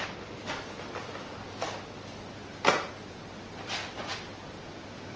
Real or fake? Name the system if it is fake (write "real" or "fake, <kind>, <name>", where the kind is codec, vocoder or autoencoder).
real